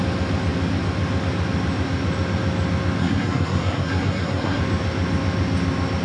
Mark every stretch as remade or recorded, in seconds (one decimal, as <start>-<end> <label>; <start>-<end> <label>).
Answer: 0.0-3.0 recorded; 3.0-4.6 remade; 4.6-6.0 recorded